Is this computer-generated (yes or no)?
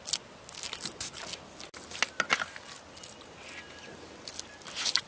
no